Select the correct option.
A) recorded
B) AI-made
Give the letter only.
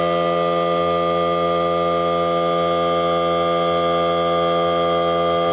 A